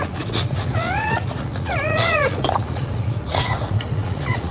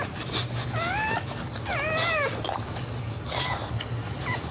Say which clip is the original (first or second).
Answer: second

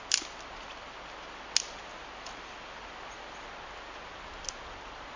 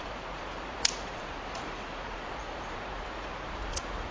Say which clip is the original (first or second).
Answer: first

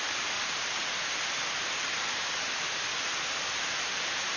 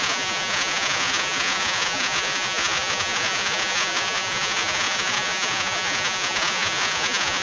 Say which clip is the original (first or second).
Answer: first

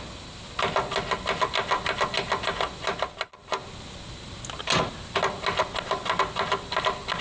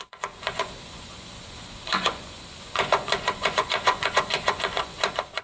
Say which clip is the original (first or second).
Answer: first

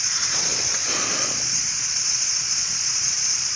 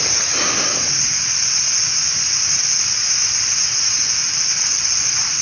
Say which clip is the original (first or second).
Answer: second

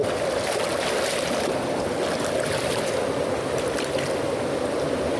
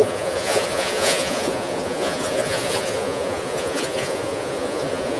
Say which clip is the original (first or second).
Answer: first